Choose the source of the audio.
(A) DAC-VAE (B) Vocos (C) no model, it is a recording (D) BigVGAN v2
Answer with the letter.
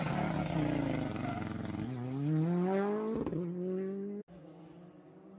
C